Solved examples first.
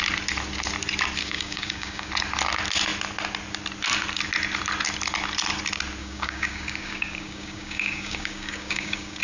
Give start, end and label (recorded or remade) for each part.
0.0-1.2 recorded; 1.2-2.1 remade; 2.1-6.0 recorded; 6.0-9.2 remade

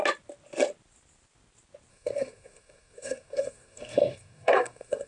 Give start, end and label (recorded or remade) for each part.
0.0-1.9 recorded; 1.9-5.1 remade

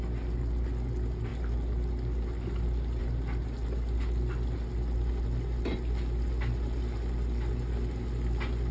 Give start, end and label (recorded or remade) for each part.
0.0-8.7 recorded

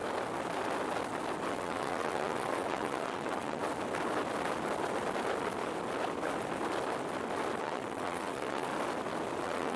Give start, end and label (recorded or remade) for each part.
0.0-1.5 recorded; 1.5-3.6 remade; 3.6-7.6 recorded; 7.6-8.7 remade; 8.7-9.4 recorded; 9.4-9.8 remade

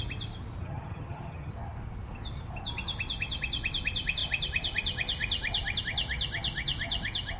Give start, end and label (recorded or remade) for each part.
0.0-0.6 recorded; 0.6-1.5 remade; 1.5-7.4 recorded

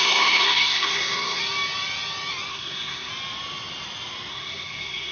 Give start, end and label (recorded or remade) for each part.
0.0-1.4 remade; 1.4-2.5 recorded; 2.5-3.1 remade; 3.1-4.3 recorded; 4.3-5.1 remade

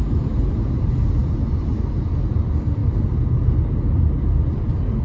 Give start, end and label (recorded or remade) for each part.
0.0-5.0 recorded

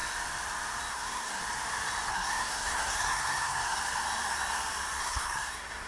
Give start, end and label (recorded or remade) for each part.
0.0-0.9 recorded; 0.9-1.4 remade; 1.4-2.1 recorded; 2.1-3.8 remade; 3.8-5.0 recorded; 5.0-5.9 remade